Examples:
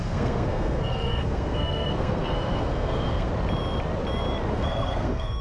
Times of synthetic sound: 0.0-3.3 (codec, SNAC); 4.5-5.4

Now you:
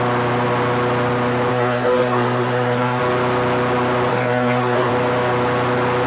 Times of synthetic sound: 1.5-3.0 (codec, SNAC); 4.1-4.9

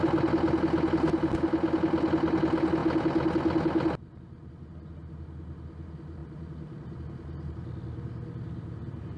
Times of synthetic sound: none

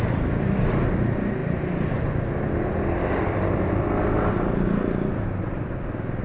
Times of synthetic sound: none

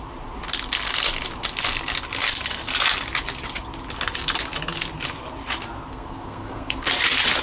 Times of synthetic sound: 5.9-6.9 (codec, SNAC)

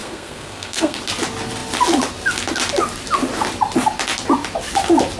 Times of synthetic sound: 0.0-1.0 (codec, SNAC)